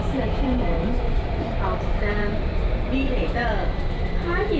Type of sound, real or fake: fake